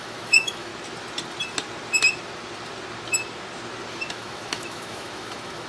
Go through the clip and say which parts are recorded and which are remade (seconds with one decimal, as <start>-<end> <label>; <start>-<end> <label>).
0.0-0.7 remade; 0.7-4.1 recorded; 4.1-5.7 remade